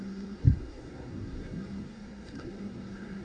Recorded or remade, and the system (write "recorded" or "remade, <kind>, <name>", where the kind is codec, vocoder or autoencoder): remade, codec, SNAC